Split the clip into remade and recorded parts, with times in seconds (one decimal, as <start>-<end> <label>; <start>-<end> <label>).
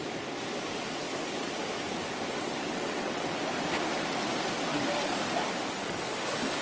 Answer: 0.0-2.3 recorded; 2.3-3.4 remade; 3.4-6.6 recorded